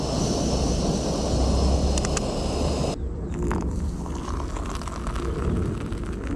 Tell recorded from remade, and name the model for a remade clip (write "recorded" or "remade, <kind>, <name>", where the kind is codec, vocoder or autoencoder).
recorded